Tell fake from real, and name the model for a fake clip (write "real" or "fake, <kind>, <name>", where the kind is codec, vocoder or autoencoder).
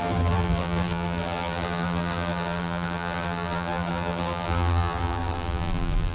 fake, vocoder, BigVGAN v2